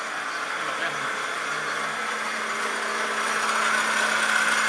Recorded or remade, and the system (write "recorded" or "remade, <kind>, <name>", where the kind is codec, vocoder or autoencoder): recorded